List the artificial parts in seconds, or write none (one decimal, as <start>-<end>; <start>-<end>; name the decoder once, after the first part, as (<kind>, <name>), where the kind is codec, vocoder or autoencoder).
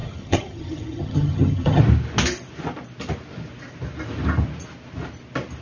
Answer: 0.0-1.8 (vocoder, HiFi-GAN)